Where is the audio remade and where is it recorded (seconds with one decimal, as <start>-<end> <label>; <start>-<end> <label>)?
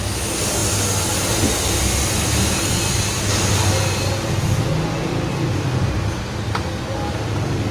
0.0-7.7 recorded